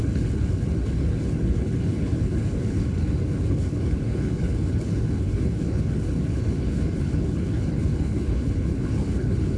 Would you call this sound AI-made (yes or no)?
yes